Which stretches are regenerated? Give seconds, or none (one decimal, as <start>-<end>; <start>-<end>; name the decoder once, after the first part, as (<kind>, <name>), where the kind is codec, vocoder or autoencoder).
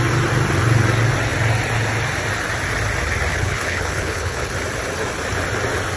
3.3-4.5 (codec, HILCodec)